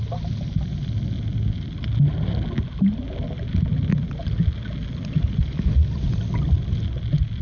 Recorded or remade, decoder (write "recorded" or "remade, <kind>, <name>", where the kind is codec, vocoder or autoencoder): recorded